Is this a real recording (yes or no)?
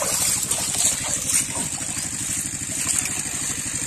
yes